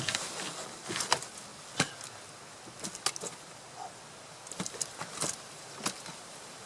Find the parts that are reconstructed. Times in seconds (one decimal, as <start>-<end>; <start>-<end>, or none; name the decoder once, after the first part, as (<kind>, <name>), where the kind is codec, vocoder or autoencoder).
none